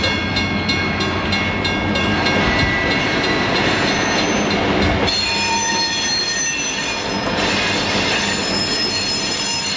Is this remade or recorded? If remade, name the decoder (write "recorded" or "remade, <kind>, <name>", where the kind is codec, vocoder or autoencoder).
recorded